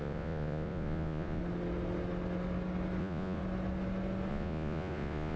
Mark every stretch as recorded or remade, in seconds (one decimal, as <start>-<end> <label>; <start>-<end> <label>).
0.0-1.4 remade; 1.4-3.0 recorded; 3.0-3.4 remade; 3.4-4.3 recorded; 4.3-5.4 remade